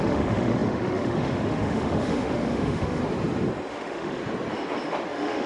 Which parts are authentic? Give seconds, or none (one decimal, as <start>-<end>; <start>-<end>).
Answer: 3.0-3.7; 4.2-5.1